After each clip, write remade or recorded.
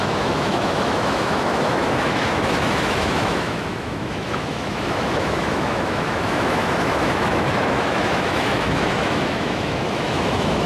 remade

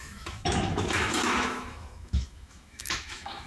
remade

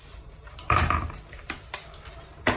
remade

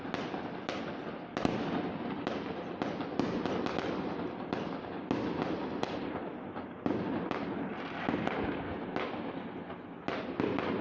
recorded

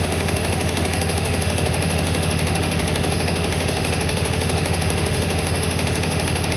remade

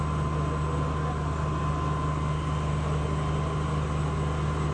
recorded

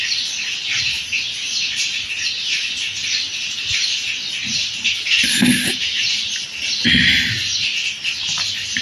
recorded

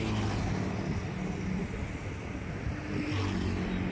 recorded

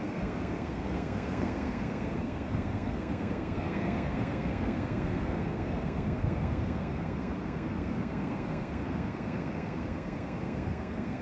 remade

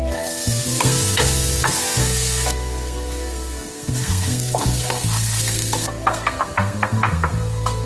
remade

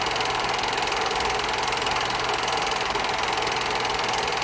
recorded